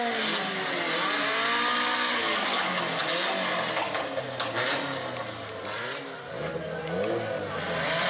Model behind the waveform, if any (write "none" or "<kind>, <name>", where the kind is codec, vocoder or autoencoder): none